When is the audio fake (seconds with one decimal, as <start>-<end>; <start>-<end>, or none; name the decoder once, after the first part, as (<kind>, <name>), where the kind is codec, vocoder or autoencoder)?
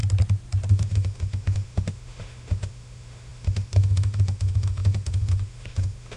0.7-6.2 (autoencoder, DAC-VAE)